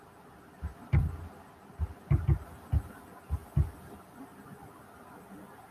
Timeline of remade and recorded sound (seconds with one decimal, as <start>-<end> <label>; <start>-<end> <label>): 0.0-5.7 recorded